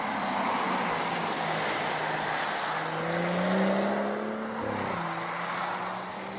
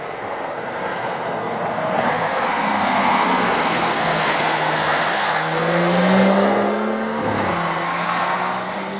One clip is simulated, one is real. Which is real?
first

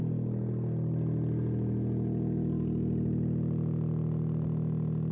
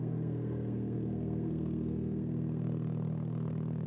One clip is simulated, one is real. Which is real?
first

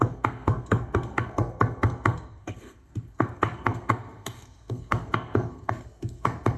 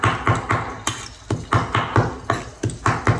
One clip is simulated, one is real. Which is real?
second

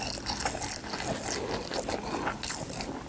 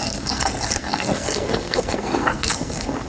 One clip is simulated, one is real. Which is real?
first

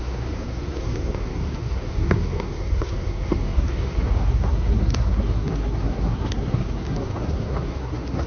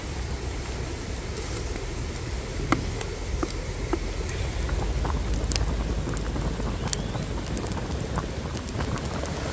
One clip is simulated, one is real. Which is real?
second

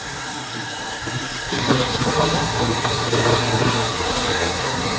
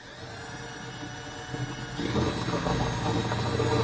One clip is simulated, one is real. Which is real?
second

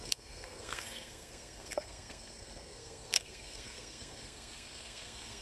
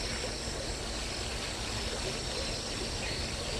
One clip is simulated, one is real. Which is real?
second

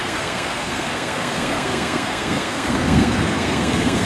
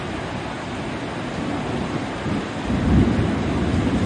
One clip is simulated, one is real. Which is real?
second